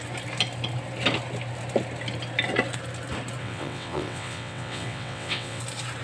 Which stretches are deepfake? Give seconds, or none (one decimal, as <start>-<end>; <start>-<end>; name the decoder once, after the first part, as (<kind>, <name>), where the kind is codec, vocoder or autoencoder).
3.4-5.6 (vocoder, WaveNeXt)